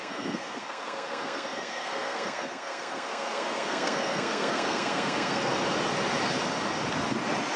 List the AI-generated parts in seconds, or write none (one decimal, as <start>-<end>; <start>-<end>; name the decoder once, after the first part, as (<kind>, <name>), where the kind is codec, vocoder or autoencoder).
0.0-5.5 (codec, SNAC)